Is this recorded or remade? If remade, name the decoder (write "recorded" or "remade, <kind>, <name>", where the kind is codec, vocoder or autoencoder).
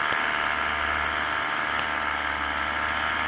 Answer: recorded